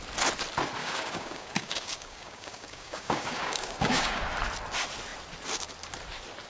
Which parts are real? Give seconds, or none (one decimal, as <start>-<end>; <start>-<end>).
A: 0.0-0.8; 4.2-6.5

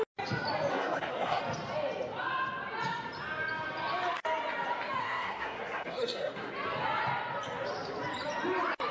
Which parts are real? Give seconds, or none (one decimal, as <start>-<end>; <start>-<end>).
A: 0.0-0.7; 1.4-5.0; 6.5-8.9

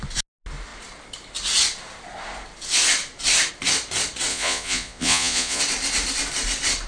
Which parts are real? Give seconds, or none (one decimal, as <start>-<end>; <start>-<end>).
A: 0.0-4.3; 5.6-6.9

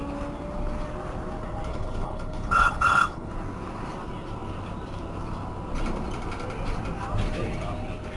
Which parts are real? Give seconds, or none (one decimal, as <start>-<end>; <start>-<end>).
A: 0.0-1.7; 3.3-8.2

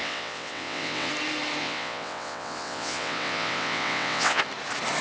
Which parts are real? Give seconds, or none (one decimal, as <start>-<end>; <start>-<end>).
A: 1.1-1.6; 4.4-5.0